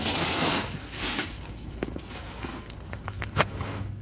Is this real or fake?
fake